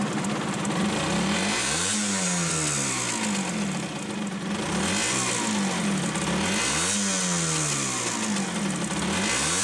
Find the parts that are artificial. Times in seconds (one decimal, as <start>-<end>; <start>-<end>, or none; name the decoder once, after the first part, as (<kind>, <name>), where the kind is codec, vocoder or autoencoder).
1.5-2.5 (vocoder, BigVGAN v2)